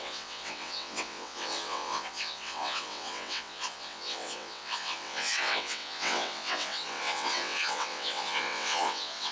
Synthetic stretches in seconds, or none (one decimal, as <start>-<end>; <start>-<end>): 0.0-9.3